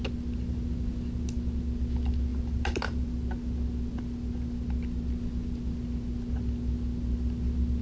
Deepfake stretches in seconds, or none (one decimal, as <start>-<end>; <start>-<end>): 2.3-3.1